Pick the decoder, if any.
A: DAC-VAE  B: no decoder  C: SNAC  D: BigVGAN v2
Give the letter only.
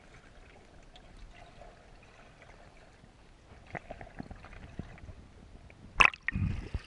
B